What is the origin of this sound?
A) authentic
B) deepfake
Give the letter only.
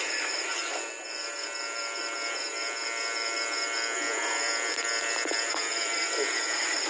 A